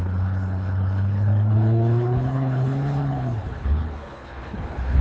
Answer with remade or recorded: remade